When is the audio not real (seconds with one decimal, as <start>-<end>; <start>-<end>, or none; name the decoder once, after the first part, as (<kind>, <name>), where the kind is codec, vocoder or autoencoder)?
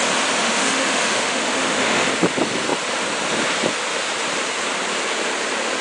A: 0.4-2.1 (autoencoder, DAC-VAE)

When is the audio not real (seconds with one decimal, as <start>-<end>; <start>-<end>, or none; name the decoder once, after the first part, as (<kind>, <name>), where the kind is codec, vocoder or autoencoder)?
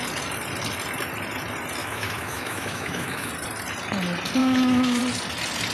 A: 1.8-3.3 (autoencoder, DAC-VAE); 4.4-5.0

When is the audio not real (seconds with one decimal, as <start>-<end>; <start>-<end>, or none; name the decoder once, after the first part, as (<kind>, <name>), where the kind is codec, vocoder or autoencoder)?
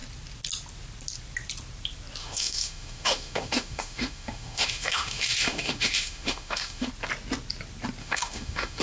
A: 2.2-6.9 (autoencoder, DAC-VAE); 8.0-8.8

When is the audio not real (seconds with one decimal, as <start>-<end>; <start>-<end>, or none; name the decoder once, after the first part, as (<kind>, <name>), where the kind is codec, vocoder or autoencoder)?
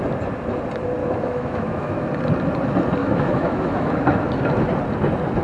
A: 1.0-2.1 (autoencoder, DAC-VAE); 3.0-4.3